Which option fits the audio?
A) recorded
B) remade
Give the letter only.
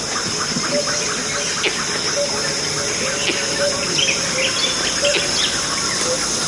A